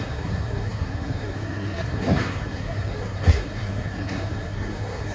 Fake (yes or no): yes